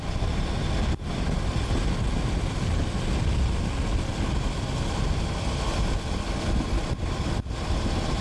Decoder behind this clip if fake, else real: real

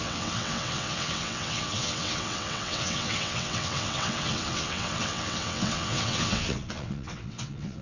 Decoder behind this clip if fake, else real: fake, vocoder, WaveNeXt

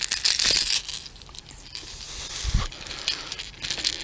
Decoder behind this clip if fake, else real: real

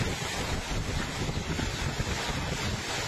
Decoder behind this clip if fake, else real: real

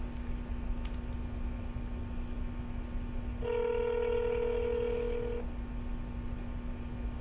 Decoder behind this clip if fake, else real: real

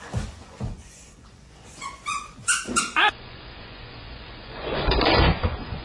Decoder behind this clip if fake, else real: fake, vocoder, Vocos